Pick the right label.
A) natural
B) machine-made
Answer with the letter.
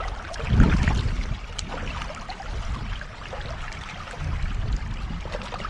A